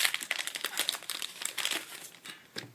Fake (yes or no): no